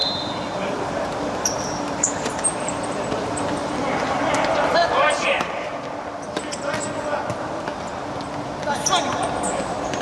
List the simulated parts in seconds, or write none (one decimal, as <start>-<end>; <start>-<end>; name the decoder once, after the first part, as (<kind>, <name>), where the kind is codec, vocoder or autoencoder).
0.0-5.7 (vocoder, BigVGAN v2); 7.3-7.7; 9.6-10.0

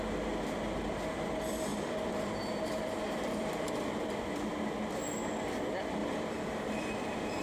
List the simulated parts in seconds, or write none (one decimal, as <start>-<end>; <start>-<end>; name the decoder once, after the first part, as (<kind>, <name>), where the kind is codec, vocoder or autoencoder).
1.7-4.5 (vocoder, BigVGAN v2); 6.0-7.4

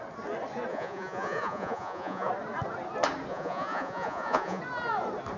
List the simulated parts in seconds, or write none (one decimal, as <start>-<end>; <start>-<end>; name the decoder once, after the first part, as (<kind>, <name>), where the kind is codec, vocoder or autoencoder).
0.7-2.3 (vocoder, Vocos); 3.3-4.6

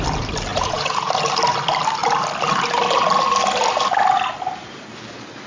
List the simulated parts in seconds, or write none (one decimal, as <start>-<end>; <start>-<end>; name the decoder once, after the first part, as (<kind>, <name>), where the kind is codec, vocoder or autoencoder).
0.5-1.1 (vocoder, Vocos)

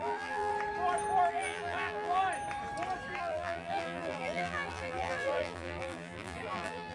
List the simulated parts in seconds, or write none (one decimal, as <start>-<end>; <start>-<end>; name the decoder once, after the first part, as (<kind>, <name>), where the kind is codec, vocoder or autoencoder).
0.0-0.5 (vocoder, BigVGAN v2); 1.3-2.2; 3.2-6.9